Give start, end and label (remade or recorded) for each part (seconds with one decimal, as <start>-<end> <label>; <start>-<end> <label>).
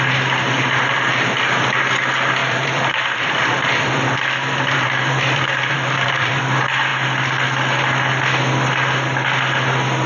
0.0-2.4 recorded; 2.4-6.4 remade; 6.4-10.1 recorded